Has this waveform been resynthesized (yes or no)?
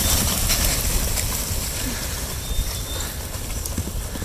no